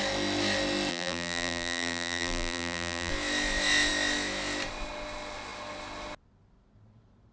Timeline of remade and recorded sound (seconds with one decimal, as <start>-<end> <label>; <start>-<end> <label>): 0.0-0.9 recorded; 0.9-3.1 remade; 3.1-7.3 recorded